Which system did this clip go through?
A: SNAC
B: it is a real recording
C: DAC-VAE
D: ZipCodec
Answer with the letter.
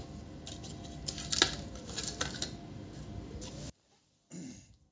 B